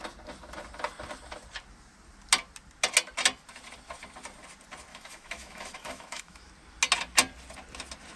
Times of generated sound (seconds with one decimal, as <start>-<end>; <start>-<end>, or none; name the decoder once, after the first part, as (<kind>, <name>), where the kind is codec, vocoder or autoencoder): 4.9-6.5 (autoencoder, DAC-VAE)